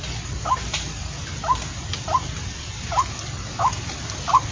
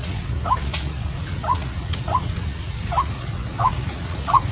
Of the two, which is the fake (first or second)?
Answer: second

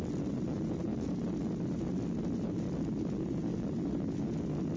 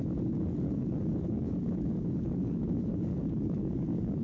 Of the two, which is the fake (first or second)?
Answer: second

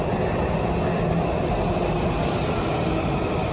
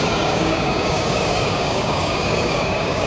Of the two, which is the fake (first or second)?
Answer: second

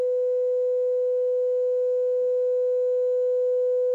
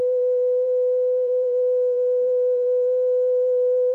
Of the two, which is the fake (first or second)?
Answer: second